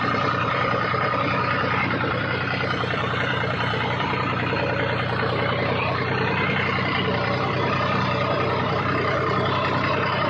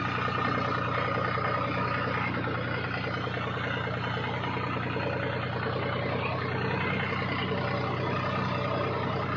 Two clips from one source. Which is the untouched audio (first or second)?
second